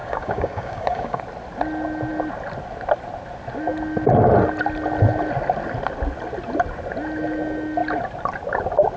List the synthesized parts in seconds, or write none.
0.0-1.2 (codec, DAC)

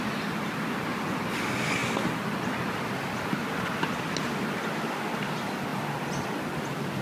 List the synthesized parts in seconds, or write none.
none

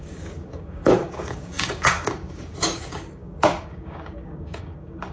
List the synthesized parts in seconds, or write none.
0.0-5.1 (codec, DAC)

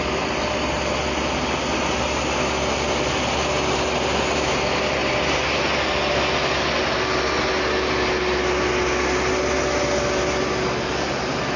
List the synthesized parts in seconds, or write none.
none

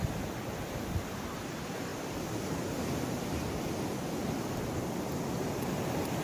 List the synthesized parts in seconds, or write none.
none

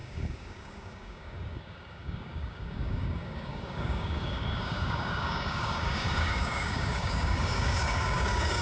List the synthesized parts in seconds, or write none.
0.0-8.6 (codec, DAC)

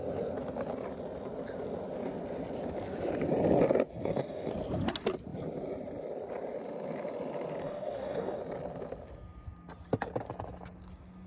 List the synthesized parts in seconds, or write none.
4.0-4.5 (codec, DAC); 7.6-8.4